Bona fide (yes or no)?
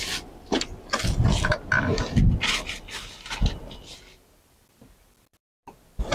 yes